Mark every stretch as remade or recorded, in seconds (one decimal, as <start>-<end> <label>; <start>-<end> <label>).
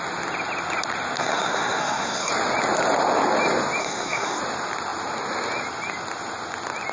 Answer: 0.0-1.2 recorded; 1.2-2.3 remade; 2.3-3.8 recorded; 3.8-4.4 remade; 4.4-6.9 recorded